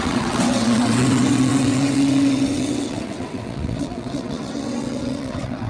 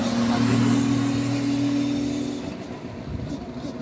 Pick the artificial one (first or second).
first